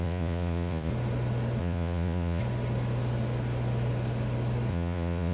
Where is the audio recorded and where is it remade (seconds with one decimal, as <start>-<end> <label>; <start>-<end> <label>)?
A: 0.0-0.9 remade; 0.9-1.6 recorded; 1.6-2.4 remade; 2.4-4.7 recorded; 4.7-5.3 remade